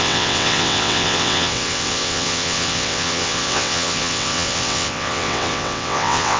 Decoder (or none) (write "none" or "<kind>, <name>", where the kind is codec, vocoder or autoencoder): vocoder, WaveNeXt